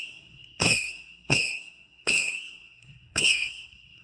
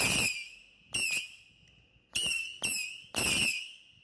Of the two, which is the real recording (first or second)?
second